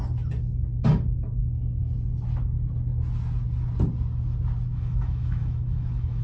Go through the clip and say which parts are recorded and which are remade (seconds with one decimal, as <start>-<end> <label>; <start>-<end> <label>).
0.0-4.7 recorded; 4.7-6.2 remade